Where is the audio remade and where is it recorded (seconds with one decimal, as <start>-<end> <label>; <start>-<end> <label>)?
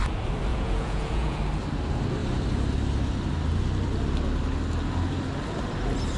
0.0-0.5 recorded; 0.5-1.4 remade; 1.4-6.2 recorded